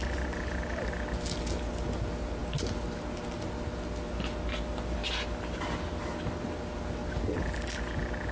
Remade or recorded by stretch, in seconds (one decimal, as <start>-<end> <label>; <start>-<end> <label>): 0.0-8.3 recorded